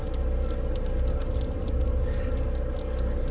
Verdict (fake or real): real